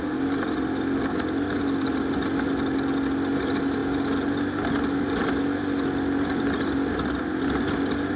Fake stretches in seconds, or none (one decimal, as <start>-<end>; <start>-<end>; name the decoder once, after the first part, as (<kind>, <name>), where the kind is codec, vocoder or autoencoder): none